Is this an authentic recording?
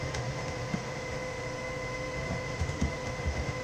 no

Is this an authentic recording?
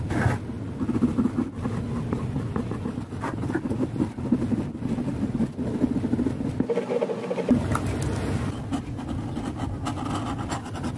yes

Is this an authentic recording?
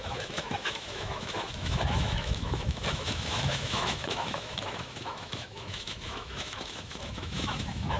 no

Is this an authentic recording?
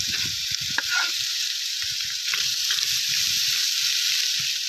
no